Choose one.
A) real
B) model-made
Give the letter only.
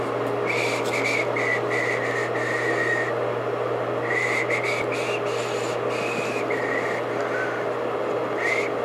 A